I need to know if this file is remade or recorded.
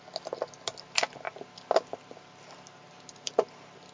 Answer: recorded